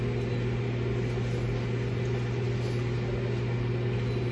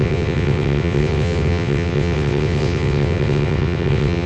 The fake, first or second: second